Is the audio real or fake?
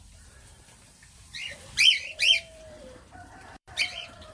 fake